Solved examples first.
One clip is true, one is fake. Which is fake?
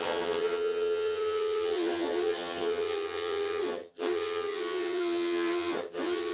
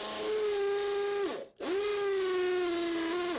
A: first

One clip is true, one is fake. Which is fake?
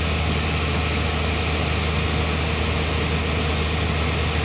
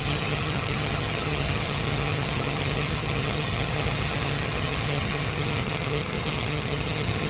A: second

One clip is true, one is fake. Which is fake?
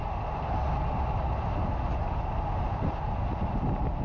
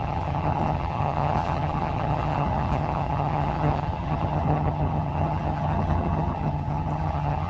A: second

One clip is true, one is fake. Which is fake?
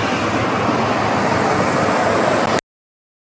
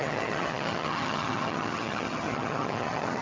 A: second